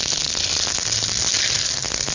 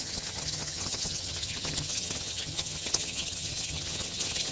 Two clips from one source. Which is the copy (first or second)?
second